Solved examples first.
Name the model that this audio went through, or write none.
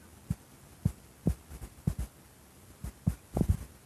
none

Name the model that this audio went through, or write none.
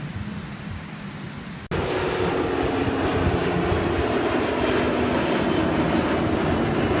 none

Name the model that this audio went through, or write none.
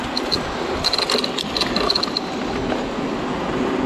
none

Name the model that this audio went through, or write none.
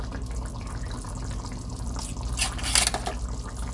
none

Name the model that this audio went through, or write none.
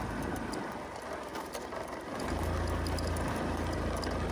none